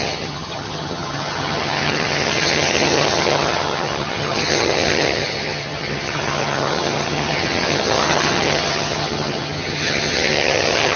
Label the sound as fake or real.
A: fake